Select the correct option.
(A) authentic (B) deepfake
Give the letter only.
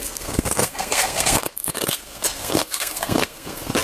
B